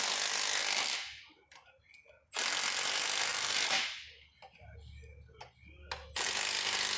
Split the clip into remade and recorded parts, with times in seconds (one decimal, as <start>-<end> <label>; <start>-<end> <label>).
0.0-3.3 recorded; 3.3-4.2 remade; 4.2-7.0 recorded